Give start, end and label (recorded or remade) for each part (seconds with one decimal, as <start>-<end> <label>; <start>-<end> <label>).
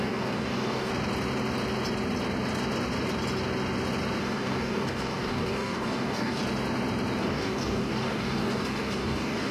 0.0-0.9 remade; 0.9-4.2 recorded; 4.2-6.4 remade; 6.4-7.2 recorded; 7.2-9.5 remade